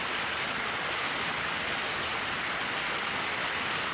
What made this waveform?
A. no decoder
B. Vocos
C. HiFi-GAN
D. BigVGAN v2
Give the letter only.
A